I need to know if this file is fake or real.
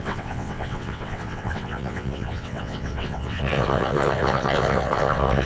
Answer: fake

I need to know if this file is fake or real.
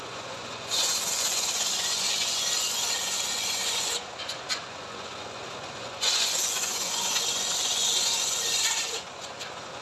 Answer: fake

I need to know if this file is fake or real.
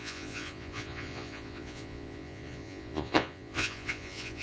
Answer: fake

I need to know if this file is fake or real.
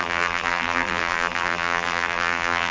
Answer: fake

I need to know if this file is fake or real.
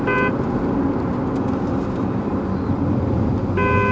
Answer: real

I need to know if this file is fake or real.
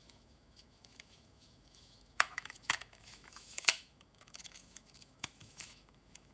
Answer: fake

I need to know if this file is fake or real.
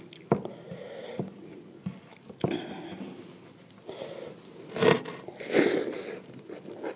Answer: real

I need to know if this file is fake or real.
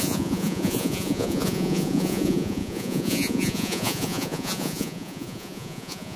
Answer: fake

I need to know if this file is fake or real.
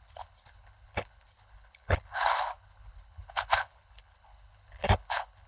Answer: fake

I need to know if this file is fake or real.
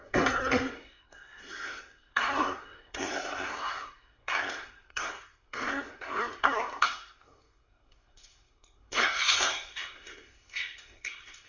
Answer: fake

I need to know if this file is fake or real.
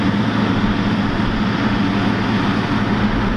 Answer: real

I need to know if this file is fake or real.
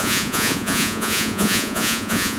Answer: fake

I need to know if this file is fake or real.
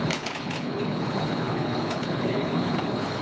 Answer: fake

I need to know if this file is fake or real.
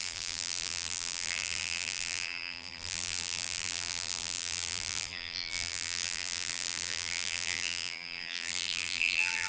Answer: fake